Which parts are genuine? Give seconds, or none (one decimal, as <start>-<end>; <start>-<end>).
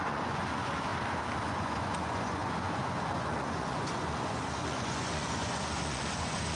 0.9-1.5